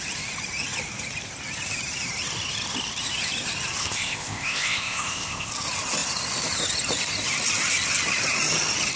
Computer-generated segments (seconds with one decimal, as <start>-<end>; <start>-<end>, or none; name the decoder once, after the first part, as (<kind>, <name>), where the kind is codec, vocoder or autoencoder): 3.8-5.5 (codec, ZipCodec)